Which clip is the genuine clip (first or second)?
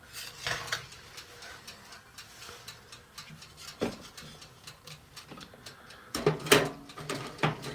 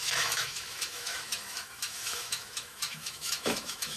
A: first